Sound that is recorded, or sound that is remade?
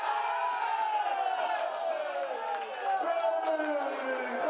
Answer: recorded